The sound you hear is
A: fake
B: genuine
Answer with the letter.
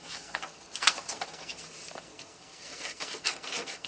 A